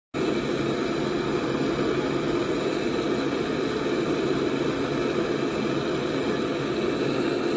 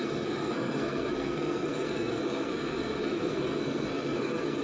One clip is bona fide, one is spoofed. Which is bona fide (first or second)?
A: first